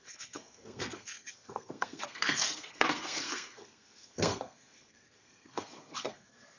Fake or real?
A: fake